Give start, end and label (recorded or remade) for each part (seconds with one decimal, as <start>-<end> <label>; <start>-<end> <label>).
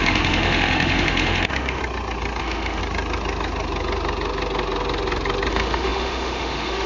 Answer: 0.0-1.8 remade; 1.8-2.4 recorded; 2.4-2.8 remade; 2.8-5.5 recorded; 5.5-6.9 remade